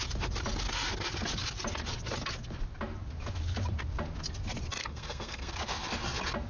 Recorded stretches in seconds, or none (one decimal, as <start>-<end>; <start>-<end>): 0.0-4.8; 5.5-6.5